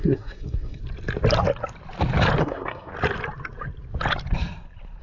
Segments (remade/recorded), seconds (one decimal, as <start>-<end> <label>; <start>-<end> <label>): 0.0-0.8 remade; 0.8-2.4 recorded; 2.4-2.9 remade; 2.9-5.0 recorded